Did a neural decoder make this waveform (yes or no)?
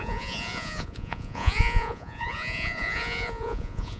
yes